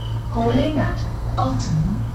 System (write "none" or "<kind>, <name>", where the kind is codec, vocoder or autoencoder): codec, SNAC